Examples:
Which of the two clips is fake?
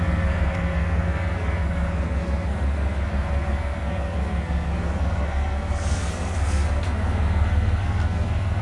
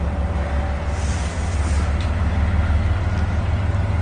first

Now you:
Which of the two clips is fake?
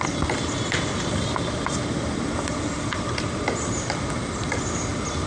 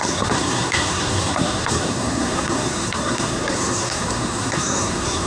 second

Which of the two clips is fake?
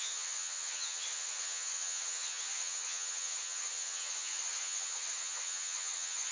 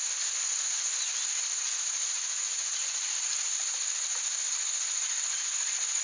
first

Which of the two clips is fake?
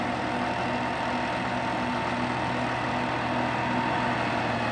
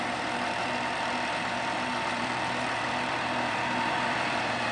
second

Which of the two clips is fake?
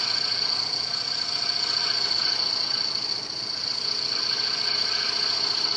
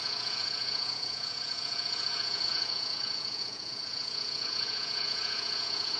second